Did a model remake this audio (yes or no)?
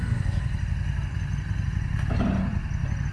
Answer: no